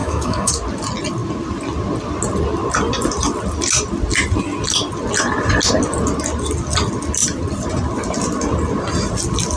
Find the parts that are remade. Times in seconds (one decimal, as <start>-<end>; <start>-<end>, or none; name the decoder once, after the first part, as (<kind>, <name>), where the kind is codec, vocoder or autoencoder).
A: 0.0-0.5 (autoencoder, DAC-VAE)